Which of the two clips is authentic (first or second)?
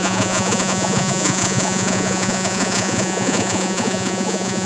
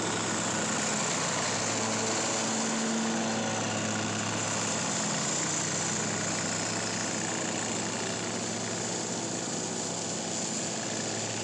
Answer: second